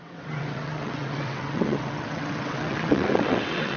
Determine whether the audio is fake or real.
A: fake